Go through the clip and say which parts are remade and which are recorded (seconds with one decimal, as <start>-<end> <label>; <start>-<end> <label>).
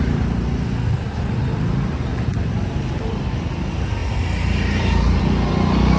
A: 0.0-2.1 recorded; 2.1-3.3 remade; 3.3-6.0 recorded